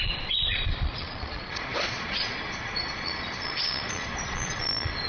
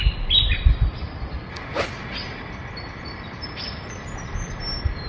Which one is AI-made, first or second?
first